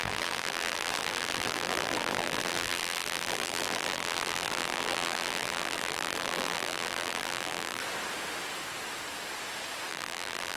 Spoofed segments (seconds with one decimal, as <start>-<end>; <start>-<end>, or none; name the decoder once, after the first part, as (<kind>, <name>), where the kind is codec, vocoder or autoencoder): 0.0-7.8 (vocoder, BigVGAN v2); 9.9-10.6